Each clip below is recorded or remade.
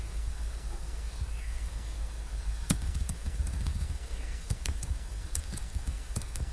remade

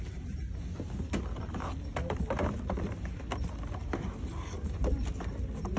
recorded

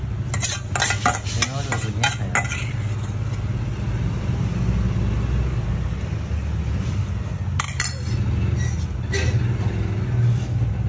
recorded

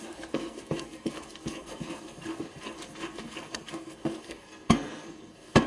remade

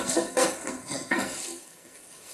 remade